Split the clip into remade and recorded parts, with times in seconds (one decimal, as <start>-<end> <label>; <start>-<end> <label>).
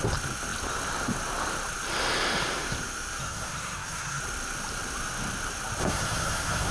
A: 0.0-3.2 recorded; 3.2-4.2 remade; 4.2-5.8 recorded; 5.8-6.7 remade